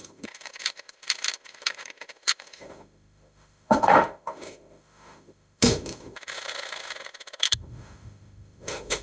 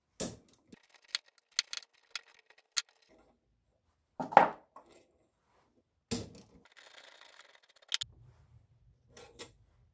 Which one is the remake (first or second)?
first